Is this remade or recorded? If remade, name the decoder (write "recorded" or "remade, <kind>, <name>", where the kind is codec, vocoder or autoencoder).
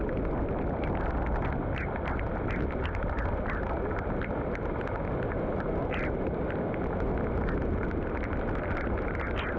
recorded